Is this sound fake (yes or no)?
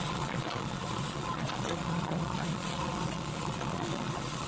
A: yes